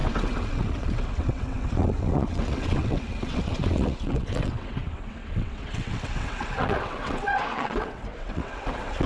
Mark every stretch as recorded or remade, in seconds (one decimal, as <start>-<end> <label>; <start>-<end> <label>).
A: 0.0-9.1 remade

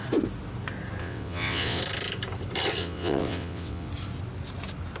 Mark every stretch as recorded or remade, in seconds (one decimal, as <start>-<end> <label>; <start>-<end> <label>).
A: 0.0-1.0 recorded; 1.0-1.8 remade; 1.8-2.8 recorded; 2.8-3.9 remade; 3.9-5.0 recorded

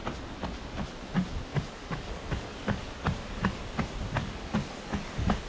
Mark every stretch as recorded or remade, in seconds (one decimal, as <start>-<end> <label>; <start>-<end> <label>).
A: 0.0-1.5 recorded; 1.5-3.7 remade; 3.7-4.2 recorded; 4.2-5.5 remade